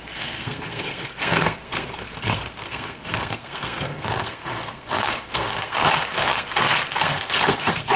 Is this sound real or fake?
fake